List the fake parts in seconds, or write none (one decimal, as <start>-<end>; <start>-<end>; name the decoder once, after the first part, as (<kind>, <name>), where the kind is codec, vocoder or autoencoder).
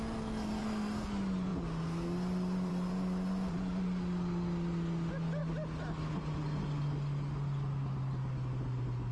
0.6-1.1 (codec, SNAC)